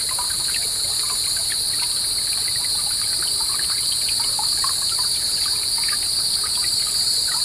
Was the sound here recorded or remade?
remade